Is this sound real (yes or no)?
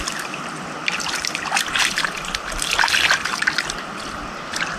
yes